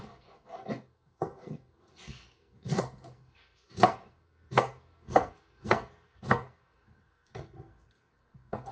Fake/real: fake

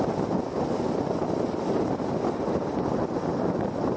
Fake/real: real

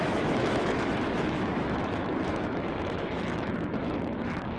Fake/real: fake